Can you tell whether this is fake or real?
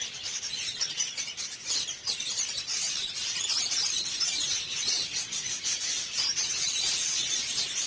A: fake